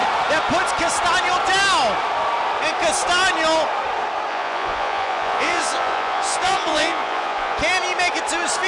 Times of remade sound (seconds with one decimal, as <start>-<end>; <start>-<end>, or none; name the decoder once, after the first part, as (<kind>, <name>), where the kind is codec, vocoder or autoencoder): 4.3-7.6 (vocoder, Vocos)